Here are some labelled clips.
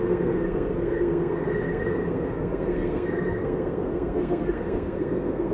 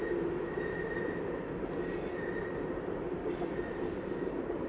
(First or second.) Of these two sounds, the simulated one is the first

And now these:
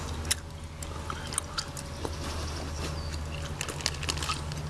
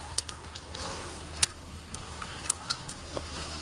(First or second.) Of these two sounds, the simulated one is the second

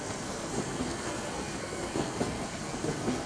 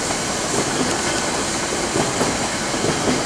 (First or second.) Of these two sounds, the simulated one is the first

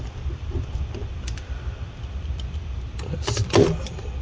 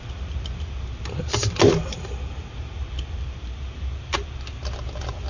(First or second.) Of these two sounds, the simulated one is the first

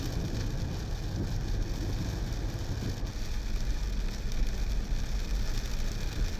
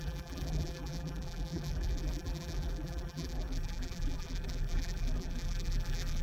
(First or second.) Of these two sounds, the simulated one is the second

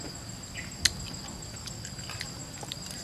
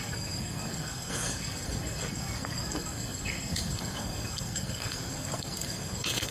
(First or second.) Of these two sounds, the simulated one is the second